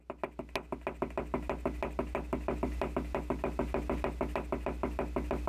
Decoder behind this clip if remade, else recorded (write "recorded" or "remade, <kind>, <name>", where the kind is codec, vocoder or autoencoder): recorded